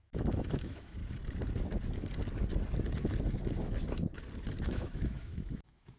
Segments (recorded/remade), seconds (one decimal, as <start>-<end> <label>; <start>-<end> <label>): 0.0-1.0 remade; 1.0-4.6 recorded; 4.6-6.0 remade